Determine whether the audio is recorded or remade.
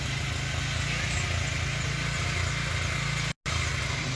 recorded